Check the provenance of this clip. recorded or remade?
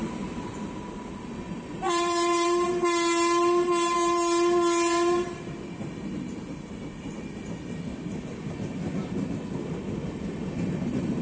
recorded